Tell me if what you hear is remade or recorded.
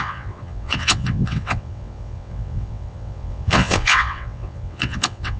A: remade